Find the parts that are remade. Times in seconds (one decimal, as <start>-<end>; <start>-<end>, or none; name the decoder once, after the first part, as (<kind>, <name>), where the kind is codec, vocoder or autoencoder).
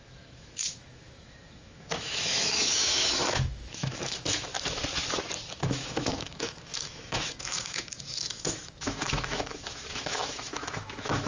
0.0-4.5 (autoencoder, DAC-VAE); 5.5-11.3